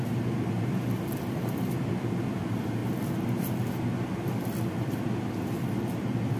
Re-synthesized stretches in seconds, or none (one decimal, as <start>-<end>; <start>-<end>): none

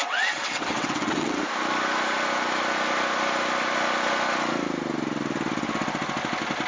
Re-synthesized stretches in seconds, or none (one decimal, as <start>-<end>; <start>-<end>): 0.0-1.4

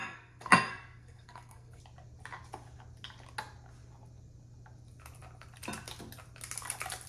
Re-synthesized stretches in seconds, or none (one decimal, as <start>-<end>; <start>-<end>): 0.0-1.8

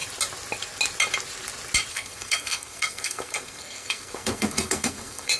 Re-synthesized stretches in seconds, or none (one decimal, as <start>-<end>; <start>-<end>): 1.9-5.4

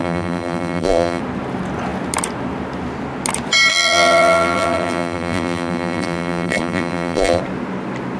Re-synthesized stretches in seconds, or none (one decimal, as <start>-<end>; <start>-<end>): 0.0-1.2; 3.7-7.4

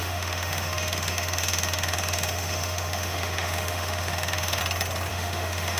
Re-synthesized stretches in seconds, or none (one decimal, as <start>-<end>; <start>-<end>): 0.0-4.6; 5.1-5.8